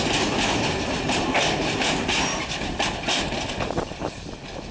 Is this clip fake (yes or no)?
no